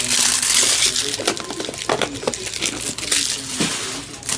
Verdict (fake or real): real